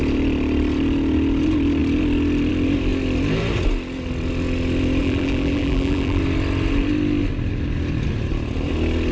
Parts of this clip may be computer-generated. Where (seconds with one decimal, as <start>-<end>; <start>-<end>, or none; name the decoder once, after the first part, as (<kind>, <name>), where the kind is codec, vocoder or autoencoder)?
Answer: 5.0-6.2 (vocoder, BigVGAN v2)